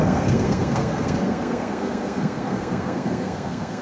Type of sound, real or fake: fake